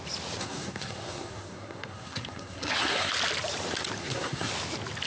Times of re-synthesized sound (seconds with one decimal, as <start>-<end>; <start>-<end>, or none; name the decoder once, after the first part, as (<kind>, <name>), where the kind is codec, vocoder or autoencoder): 0.4-3.1 (codec, SNAC); 4.0-4.5